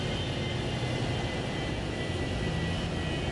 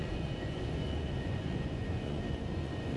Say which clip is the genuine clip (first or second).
first